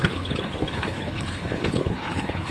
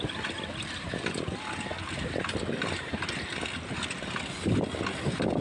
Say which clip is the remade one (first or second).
first